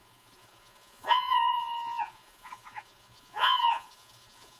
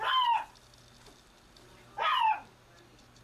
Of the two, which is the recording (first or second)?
second